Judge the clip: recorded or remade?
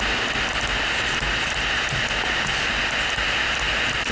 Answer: recorded